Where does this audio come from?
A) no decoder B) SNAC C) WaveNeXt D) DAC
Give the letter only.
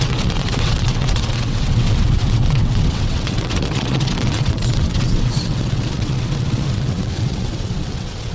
C